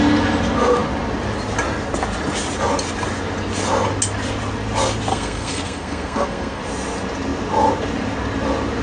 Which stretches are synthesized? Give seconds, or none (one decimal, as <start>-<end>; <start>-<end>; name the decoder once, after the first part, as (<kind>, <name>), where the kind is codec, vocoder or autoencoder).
5.1-6.6 (codec, SNAC)